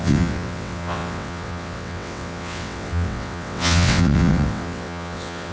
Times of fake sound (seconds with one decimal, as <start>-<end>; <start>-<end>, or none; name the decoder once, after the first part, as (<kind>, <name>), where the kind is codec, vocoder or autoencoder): 0.0-5.5 (vocoder, WaveNeXt)

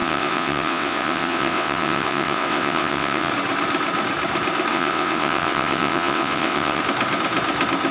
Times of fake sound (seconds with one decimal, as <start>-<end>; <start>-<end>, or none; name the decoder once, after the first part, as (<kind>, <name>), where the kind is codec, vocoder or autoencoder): 0.0-3.3 (vocoder, WaveNeXt); 4.7-6.8